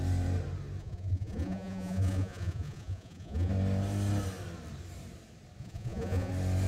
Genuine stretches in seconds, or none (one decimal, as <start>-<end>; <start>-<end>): 0.0-0.8; 3.5-5.6; 6.3-6.7